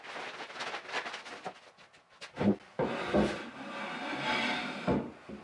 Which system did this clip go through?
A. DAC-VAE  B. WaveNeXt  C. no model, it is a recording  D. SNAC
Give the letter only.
C